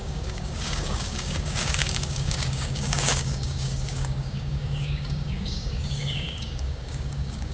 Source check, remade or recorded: remade